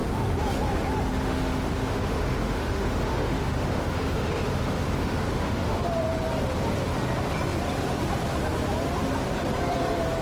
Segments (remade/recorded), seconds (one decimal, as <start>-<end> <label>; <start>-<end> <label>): 0.0-1.1 recorded; 1.1-5.8 remade; 5.8-10.2 recorded